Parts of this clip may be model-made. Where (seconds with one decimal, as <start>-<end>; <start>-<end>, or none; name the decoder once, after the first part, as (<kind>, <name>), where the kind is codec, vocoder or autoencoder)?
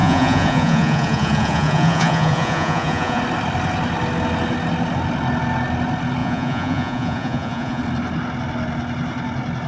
0.0-3.2 (vocoder, Vocos); 6.2-7.8